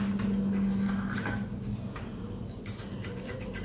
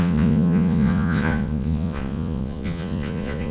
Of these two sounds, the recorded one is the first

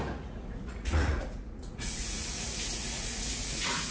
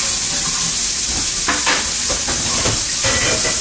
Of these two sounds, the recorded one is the second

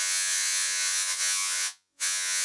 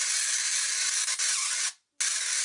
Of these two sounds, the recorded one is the second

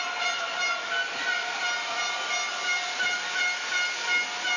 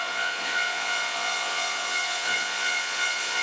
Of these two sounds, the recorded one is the first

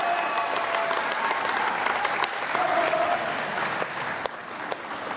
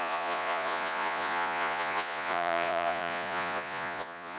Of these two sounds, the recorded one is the first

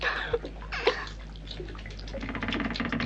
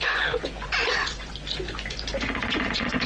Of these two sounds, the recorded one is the first